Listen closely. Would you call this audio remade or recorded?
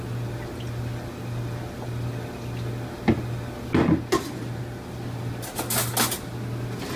recorded